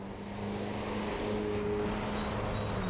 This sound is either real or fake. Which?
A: real